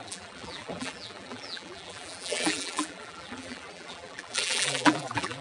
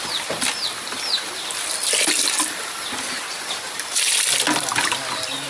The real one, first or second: second